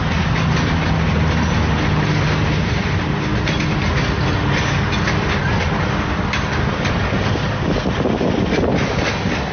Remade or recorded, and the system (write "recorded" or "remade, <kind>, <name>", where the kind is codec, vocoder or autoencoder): recorded